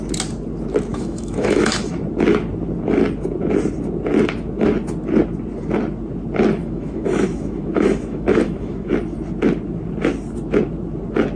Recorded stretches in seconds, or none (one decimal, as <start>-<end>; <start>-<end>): 0.0-0.9; 1.9-6.6; 8.9-11.4

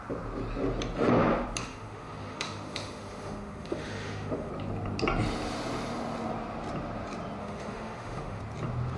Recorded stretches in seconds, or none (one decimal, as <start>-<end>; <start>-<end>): 0.0-1.6; 4.5-7.4; 8.4-9.0

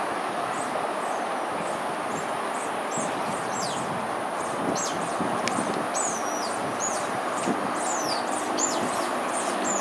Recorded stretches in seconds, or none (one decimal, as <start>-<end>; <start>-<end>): 0.0-9.8

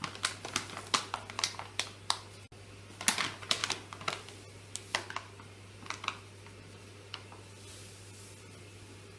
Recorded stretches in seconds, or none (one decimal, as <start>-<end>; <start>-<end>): 0.0-9.2

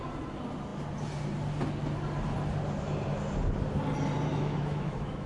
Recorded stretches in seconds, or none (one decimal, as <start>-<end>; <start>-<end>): 0.0-4.3